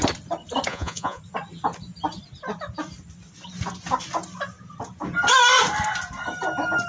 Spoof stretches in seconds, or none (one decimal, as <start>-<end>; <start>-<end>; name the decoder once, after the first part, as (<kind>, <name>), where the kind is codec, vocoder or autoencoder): 0.7-1.2 (vocoder, Vocos)